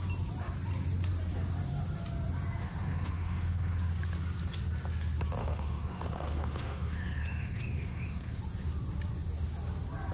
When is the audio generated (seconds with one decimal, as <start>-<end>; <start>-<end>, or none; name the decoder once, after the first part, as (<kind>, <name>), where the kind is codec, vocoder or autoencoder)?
2.6-3.9 (autoencoder, DAC-VAE); 5.4-8.4